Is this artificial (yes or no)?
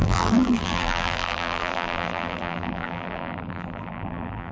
yes